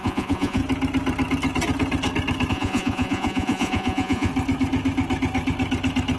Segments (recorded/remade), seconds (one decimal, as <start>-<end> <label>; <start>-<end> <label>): 0.0-0.6 remade; 0.6-2.5 recorded; 2.5-4.3 remade; 4.3-6.2 recorded